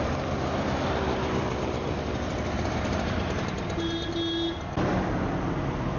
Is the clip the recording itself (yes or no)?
yes